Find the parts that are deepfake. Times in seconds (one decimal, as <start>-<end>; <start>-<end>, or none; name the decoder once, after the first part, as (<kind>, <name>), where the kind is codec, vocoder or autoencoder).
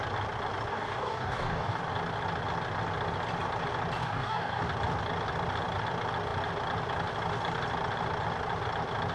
0.7-1.8 (codec, DAC); 4.0-4.6